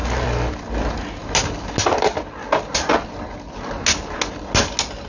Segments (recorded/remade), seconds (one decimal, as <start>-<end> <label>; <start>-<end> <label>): 0.0-5.1 recorded